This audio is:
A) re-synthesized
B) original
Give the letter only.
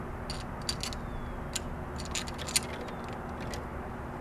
B